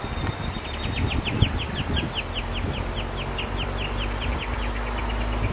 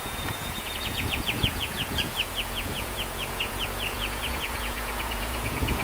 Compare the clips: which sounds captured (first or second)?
first